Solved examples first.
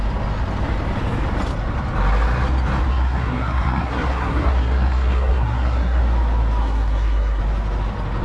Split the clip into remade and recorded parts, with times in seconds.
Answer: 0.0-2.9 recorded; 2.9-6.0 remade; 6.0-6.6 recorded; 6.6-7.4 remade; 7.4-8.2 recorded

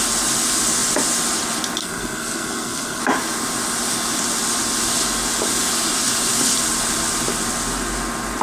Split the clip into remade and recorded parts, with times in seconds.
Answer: 0.0-1.8 recorded; 1.8-3.0 remade; 3.0-8.4 recorded

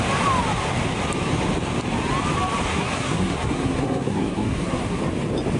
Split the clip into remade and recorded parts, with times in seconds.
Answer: 0.0-2.7 recorded; 2.7-5.0 remade; 5.0-5.6 recorded

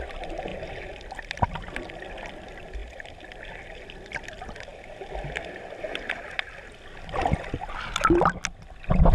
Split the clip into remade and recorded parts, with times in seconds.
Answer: 0.0-9.1 recorded

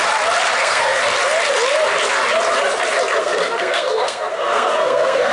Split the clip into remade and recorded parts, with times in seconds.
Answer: 0.0-0.6 recorded; 0.6-1.0 remade; 1.0-3.2 recorded; 3.2-5.3 remade

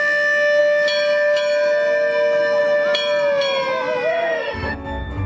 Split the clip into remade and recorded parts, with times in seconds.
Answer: 0.0-4.1 recorded; 4.1-5.3 remade

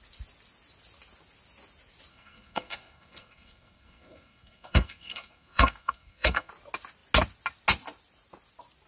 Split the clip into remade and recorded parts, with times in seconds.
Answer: 0.0-2.1 recorded; 2.1-6.5 remade; 6.5-8.9 recorded

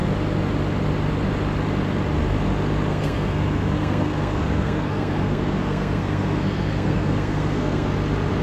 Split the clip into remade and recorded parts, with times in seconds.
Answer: 0.0-2.9 recorded; 2.9-7.9 remade; 7.9-8.4 recorded